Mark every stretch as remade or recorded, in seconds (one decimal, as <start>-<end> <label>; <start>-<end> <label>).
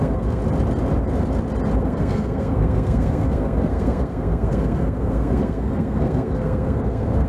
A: 0.0-0.4 remade; 0.4-1.8 recorded; 1.8-7.3 remade